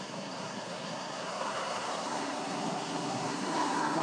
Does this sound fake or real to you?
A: fake